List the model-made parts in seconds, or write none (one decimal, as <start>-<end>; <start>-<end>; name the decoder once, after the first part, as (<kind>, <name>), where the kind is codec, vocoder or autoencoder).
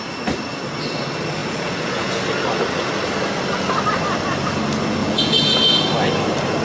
1.4-2.2 (vocoder, Vocos); 5.0-5.9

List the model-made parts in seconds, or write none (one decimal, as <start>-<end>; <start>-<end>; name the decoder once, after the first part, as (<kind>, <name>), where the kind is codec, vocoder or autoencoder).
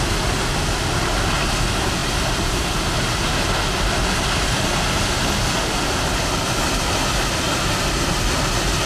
none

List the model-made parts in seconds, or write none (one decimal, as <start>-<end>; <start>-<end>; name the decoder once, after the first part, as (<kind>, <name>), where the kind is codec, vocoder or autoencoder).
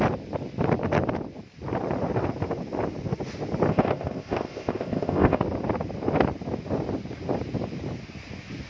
3.7-5.4 (codec, ZipCodec)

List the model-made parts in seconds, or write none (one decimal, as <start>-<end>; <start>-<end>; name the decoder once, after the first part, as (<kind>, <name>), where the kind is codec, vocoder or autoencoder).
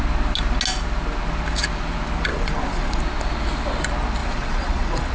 2.3-3.0 (vocoder, Vocos); 4.2-5.1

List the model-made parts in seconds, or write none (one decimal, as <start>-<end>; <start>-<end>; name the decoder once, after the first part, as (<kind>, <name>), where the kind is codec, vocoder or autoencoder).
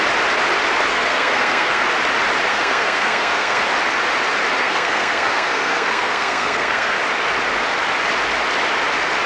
0.9-1.8 (codec, SNAC); 2.5-3.6; 4.6-7.0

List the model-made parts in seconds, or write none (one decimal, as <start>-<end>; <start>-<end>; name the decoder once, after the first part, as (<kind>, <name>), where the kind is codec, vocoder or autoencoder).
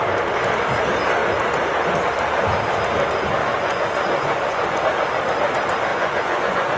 3.4-4.8 (vocoder, Vocos); 5.9-6.8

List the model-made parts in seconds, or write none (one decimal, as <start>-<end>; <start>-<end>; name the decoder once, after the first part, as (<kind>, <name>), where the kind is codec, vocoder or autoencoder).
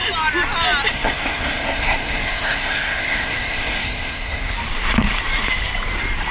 0.9-4.5 (codec, SNAC)